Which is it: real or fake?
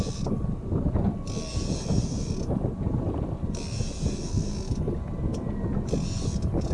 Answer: real